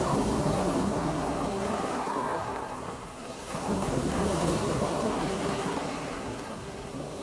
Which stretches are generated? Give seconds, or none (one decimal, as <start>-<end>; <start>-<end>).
0.0-7.2